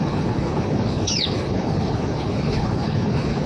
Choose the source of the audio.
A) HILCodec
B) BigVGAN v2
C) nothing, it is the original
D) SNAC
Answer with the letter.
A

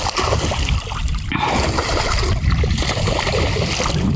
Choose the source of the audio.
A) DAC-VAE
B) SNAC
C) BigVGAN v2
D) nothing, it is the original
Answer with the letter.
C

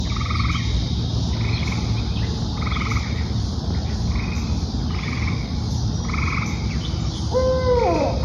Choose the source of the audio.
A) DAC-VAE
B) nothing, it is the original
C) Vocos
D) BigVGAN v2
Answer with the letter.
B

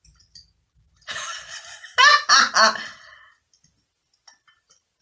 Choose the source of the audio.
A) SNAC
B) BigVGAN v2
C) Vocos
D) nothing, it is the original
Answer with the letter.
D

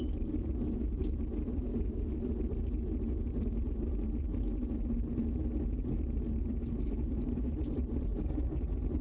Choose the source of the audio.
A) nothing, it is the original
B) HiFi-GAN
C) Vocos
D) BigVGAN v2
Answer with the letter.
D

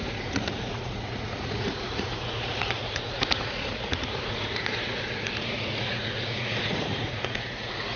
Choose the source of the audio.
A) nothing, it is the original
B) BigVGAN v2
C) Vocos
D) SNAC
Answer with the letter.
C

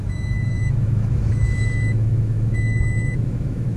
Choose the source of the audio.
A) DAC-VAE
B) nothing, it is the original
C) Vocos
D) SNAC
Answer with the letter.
A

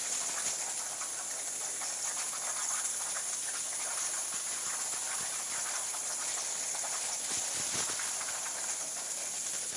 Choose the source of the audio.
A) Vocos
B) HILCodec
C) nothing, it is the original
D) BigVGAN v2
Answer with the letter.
C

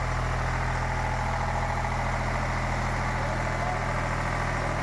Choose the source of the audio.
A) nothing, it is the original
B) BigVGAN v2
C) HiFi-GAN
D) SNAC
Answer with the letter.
A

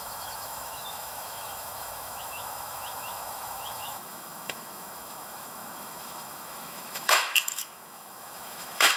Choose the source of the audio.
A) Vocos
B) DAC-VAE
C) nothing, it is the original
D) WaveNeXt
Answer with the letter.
B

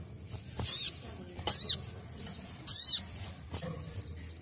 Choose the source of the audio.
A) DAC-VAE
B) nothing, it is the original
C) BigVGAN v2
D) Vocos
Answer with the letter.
B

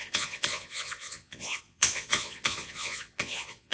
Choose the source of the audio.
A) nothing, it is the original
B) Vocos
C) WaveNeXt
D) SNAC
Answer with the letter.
B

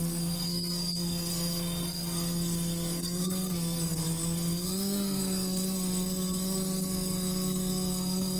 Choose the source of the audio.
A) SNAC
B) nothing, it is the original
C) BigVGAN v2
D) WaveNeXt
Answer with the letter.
A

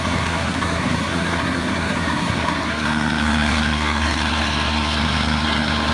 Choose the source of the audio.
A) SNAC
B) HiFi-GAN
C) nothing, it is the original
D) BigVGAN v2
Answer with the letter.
A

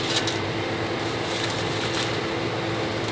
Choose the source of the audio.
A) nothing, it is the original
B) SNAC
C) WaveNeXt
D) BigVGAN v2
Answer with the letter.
A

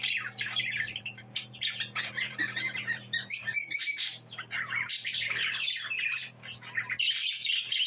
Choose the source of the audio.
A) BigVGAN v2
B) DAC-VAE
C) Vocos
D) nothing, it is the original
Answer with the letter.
A